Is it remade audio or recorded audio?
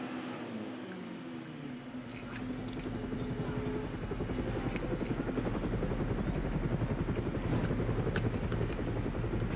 recorded